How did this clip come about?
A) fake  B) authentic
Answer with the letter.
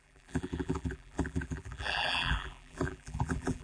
A